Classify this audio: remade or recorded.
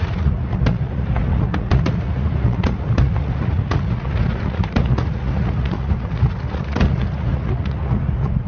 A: remade